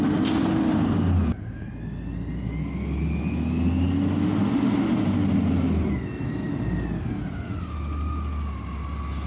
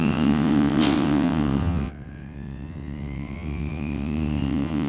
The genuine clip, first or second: first